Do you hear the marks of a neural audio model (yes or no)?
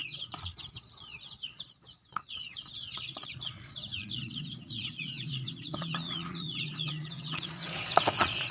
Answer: yes